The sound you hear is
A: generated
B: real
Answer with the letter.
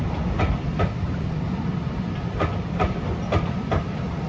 B